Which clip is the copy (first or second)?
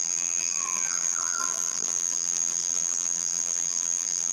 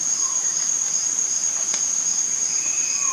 first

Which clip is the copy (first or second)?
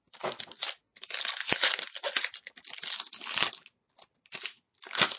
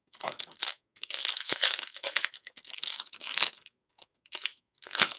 second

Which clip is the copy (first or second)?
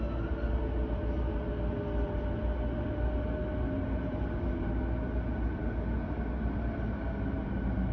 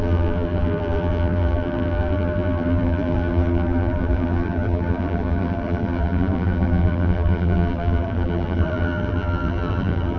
second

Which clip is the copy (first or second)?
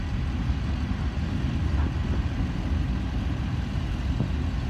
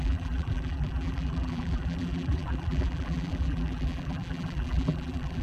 second